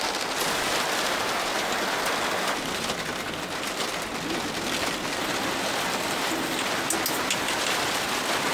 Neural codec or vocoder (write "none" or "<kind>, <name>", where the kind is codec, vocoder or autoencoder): none